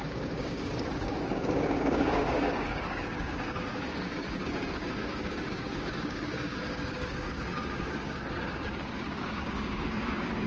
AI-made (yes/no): yes